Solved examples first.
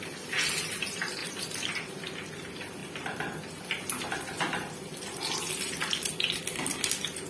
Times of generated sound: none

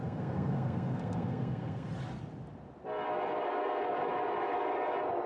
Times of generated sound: 0.0-1.9

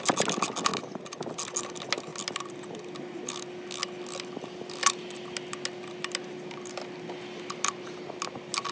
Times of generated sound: none

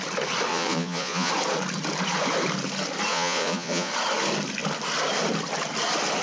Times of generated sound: 0.5-1.3; 3.1-3.9

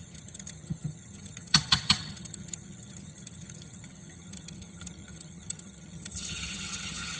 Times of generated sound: 0.0-7.2

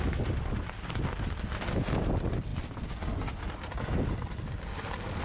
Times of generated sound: none